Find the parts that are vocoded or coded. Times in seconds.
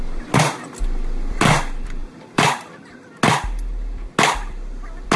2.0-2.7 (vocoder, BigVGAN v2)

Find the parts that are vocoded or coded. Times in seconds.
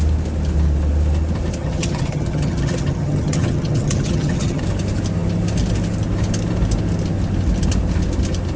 1.6-4.6 (vocoder, HiFi-GAN)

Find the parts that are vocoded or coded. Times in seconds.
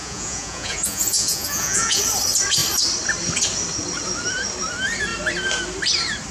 0.0-2.0 (vocoder, Vocos)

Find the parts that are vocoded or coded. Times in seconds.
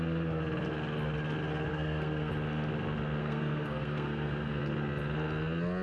1.7-2.3 (codec, SNAC); 3.2-4.6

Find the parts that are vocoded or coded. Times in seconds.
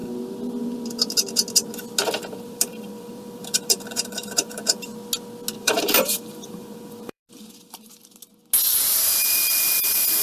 2.5-4.9 (vocoder, BigVGAN v2); 5.6-7.2; 9.2-10.2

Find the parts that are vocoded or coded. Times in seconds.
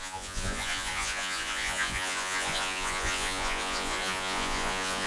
0.0-5.1 (vocoder, Vocos)